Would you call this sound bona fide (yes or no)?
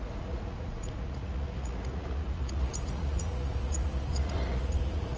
no